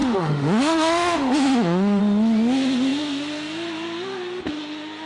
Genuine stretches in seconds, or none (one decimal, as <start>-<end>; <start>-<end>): 2.0-5.1